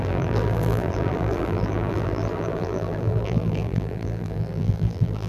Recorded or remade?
remade